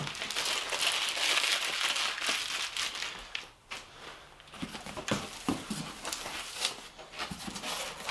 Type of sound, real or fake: real